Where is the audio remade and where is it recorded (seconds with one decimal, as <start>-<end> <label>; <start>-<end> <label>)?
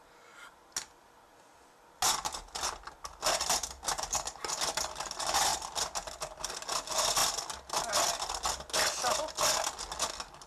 0.0-10.5 recorded